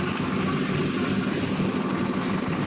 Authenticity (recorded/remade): recorded